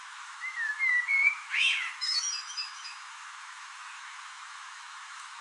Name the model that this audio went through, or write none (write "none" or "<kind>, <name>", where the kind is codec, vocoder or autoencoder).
autoencoder, DAC-VAE